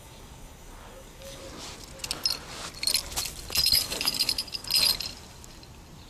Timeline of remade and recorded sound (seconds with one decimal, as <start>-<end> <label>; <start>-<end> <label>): 0.0-1.4 remade; 1.4-3.7 recorded; 3.7-4.6 remade; 4.6-6.1 recorded